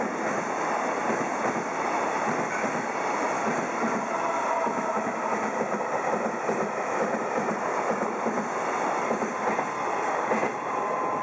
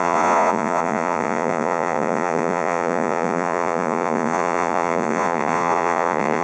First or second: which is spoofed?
second